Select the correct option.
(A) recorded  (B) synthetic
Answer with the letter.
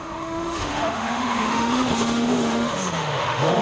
B